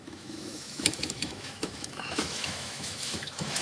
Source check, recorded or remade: remade